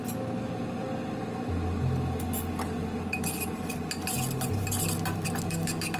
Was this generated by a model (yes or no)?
no